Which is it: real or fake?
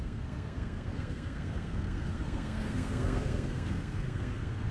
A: fake